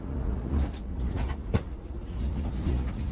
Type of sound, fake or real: fake